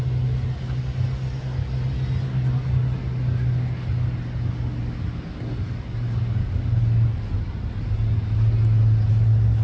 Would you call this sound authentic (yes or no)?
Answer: yes